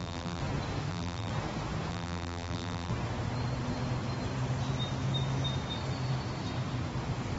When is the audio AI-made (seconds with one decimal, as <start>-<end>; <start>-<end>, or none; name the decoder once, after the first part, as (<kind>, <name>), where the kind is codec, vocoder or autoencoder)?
0.0-0.4 (vocoder, BigVGAN v2); 0.9-1.3; 1.9-2.9